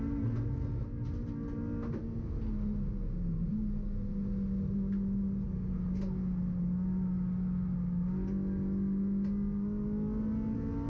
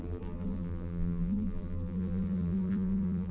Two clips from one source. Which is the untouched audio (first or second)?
first